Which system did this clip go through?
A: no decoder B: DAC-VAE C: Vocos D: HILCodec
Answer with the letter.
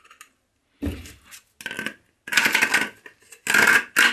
A